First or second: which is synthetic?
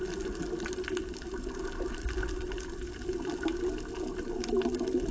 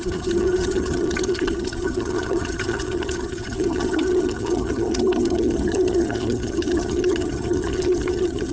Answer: second